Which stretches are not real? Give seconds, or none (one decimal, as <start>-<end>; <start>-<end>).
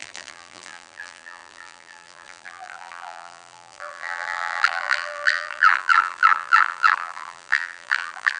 0.0-8.4